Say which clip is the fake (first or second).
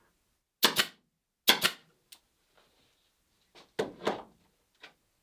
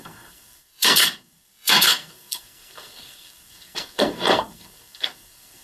second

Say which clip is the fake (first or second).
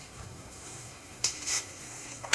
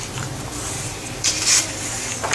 first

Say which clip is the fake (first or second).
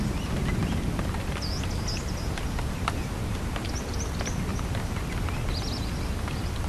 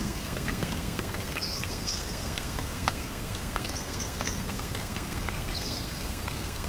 second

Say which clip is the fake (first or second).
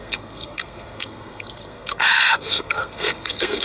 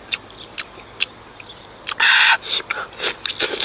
first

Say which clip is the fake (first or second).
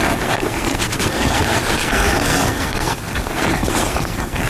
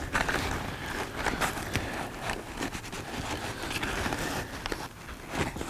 first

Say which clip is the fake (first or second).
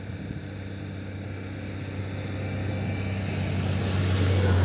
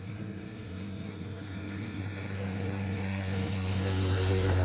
second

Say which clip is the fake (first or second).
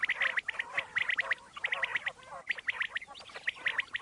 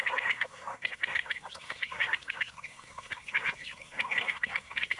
second